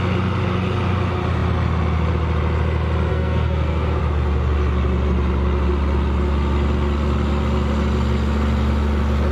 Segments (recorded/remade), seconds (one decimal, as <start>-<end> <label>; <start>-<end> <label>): 0.0-3.1 recorded; 3.1-4.0 remade; 4.0-9.3 recorded